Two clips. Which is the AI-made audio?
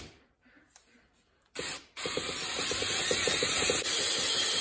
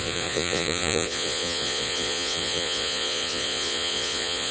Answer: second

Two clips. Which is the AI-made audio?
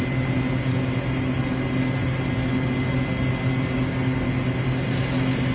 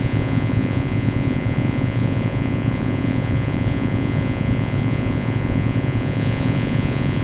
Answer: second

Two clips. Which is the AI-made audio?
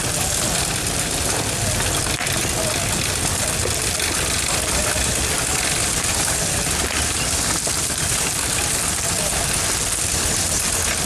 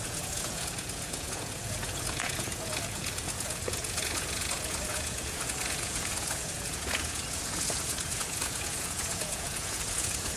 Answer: second